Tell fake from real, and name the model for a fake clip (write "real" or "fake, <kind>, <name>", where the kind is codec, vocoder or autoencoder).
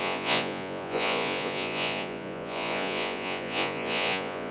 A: fake, vocoder, Vocos